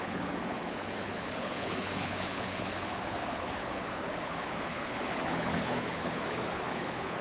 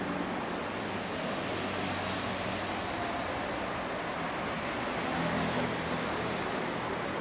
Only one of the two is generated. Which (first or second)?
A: first